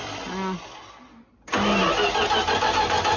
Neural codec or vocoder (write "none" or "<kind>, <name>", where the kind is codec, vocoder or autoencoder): none